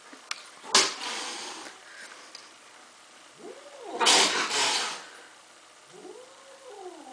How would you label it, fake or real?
real